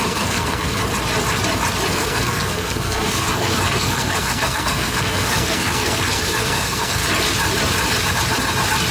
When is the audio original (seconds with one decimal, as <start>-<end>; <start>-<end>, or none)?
0.8-1.9; 7.0-8.9